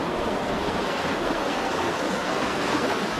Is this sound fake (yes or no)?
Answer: yes